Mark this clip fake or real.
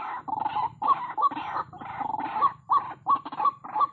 real